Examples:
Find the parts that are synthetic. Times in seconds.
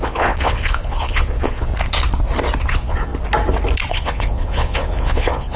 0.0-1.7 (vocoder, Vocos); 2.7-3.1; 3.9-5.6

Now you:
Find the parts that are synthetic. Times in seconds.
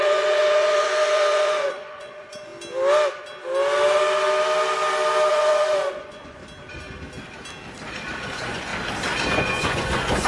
0.0-2.5 (vocoder, Vocos); 5.3-6.4; 8.2-8.7; 9.3-10.3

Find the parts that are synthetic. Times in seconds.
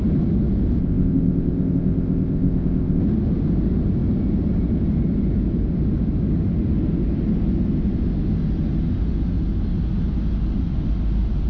0.8-3.0 (codec, ZipCodec)